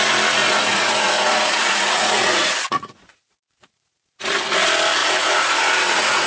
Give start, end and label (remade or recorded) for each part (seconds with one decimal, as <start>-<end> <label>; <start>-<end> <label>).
0.0-0.4 recorded; 0.4-4.2 remade; 4.2-5.0 recorded; 5.0-6.3 remade